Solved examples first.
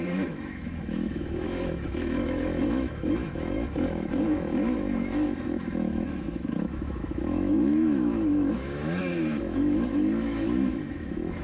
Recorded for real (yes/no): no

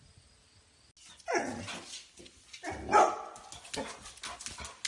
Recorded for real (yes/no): yes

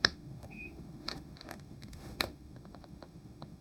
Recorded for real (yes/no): no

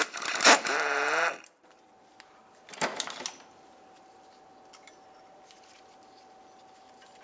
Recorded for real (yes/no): yes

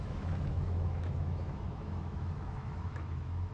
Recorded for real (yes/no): no